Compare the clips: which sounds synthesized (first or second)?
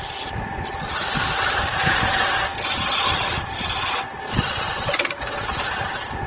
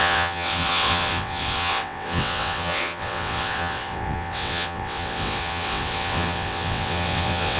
second